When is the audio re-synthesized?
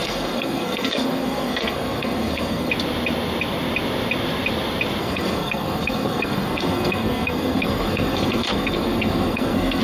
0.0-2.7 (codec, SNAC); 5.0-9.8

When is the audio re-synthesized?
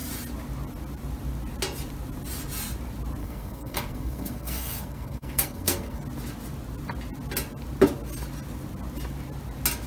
3.2-6.0 (codec, SNAC)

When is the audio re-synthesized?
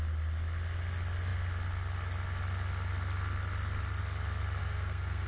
4.6-5.3 (codec, SNAC)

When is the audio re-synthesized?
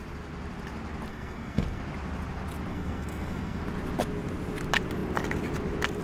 1.1-1.8 (codec, SNAC); 2.7-3.6